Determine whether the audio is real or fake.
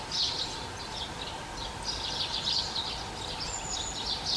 real